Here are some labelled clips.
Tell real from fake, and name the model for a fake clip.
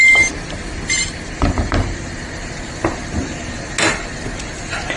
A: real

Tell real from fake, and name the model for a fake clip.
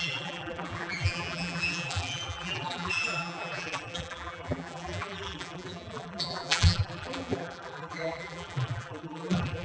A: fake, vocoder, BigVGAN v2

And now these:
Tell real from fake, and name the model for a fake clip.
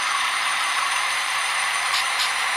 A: fake, vocoder, BigVGAN v2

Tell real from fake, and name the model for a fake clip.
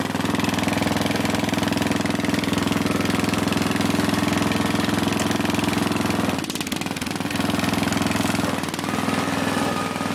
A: real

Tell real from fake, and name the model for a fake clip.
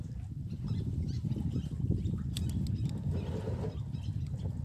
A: real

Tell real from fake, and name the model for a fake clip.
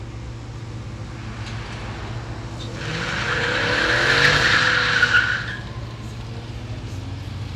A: real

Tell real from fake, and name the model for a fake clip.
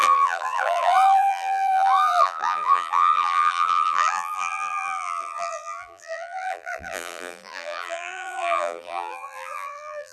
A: fake, vocoder, BigVGAN v2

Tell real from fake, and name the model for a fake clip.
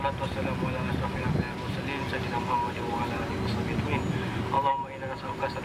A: real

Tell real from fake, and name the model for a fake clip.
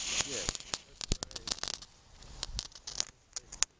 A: real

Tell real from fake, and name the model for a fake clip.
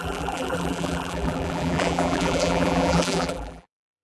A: fake, vocoder, BigVGAN v2